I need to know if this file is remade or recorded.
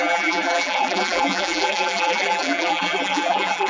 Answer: remade